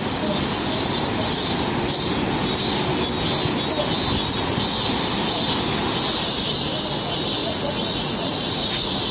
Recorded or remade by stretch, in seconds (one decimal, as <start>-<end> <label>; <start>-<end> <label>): 0.0-7.4 recorded; 7.4-9.1 remade